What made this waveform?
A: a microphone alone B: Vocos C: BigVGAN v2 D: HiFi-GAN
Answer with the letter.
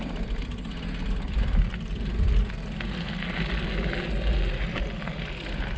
A